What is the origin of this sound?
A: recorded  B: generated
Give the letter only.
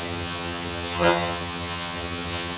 B